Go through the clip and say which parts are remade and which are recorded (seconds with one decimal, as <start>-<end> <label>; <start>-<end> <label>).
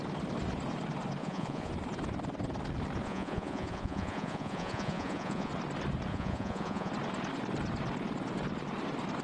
0.0-1.2 recorded; 1.2-1.7 remade; 1.7-3.0 recorded; 3.0-5.5 remade; 5.5-6.1 recorded; 6.1-6.9 remade; 6.9-9.2 recorded